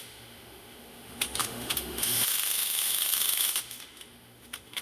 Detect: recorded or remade remade